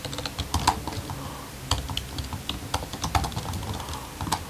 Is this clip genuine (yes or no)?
yes